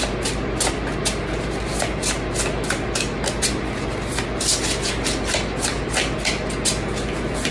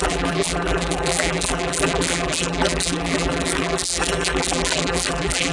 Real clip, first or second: first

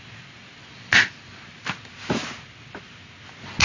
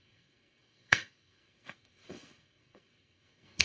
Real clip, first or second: first